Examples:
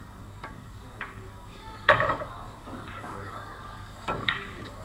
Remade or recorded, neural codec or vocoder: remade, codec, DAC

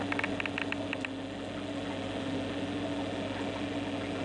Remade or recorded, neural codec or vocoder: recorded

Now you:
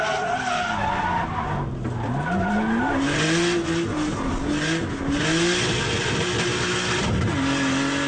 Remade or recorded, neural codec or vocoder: recorded